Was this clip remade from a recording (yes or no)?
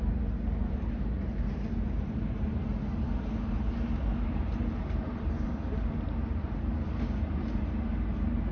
yes